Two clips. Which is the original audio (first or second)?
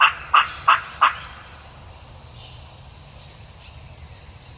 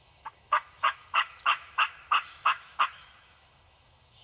first